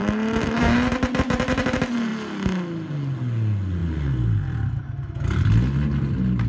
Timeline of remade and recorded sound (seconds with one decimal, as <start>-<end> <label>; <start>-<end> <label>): 0.0-6.5 recorded